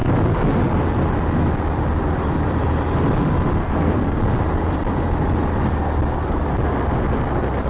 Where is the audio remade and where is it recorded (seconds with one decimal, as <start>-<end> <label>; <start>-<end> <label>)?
0.0-3.6 recorded; 3.6-4.2 remade; 4.2-7.7 recorded